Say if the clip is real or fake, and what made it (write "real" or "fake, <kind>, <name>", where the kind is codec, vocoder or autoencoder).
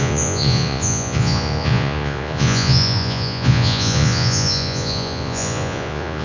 fake, vocoder, Vocos